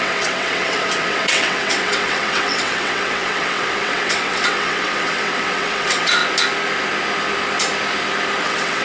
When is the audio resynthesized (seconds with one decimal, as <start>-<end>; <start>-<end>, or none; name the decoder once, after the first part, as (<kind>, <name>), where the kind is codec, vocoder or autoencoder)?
0.0-6.2 (vocoder, WaveNeXt); 8.4-8.8